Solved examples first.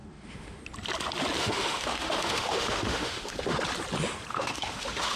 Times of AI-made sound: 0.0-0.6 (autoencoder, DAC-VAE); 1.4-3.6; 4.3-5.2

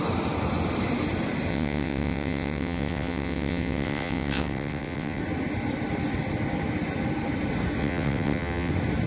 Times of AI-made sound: 1.5-5.2 (vocoder, WaveNeXt); 7.8-8.7

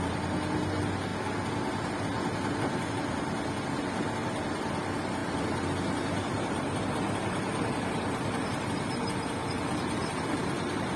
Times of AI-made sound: 5.2-8.6 (vocoder, BigVGAN v2); 9.4-11.0